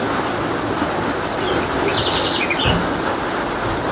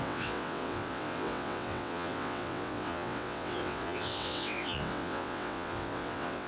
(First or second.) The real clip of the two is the first